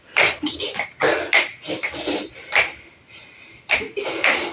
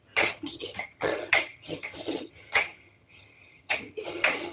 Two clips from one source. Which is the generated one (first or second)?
second